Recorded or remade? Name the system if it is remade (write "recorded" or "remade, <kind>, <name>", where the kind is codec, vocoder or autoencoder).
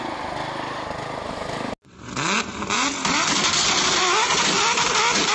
recorded